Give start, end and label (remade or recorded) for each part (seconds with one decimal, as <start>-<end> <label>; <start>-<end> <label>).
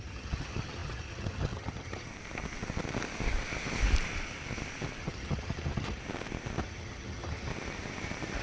0.0-2.1 remade; 2.1-5.0 recorded; 5.0-6.0 remade; 6.0-6.6 recorded; 6.6-7.5 remade; 7.5-8.4 recorded